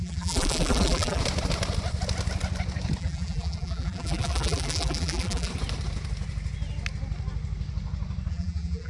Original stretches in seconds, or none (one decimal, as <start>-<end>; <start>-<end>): 1.2-3.0; 5.5-8.3

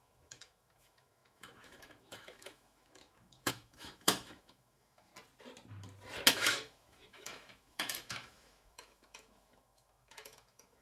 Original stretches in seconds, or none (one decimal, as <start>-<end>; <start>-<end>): 5.1-6.3